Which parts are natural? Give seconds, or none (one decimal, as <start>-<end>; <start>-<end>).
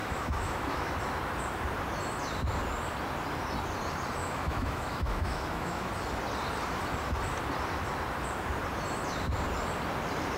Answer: 0.9-4.2; 5.9-10.4